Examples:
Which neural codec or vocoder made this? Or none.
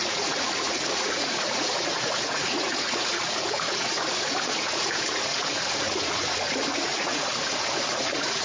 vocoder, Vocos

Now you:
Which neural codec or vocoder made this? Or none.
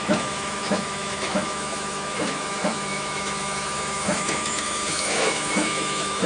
autoencoder, DAC-VAE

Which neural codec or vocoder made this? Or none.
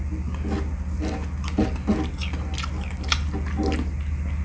none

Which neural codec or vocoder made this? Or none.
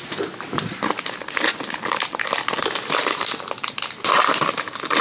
none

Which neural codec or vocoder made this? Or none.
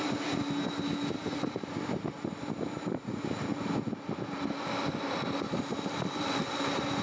none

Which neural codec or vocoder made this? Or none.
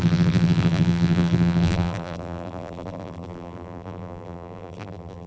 vocoder, BigVGAN v2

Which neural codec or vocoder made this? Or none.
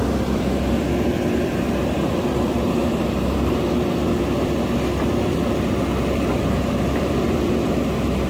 vocoder, BigVGAN v2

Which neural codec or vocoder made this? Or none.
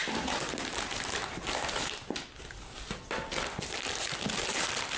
none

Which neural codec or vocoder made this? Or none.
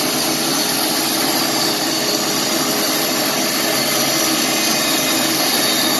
none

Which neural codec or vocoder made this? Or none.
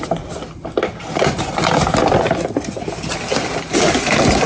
none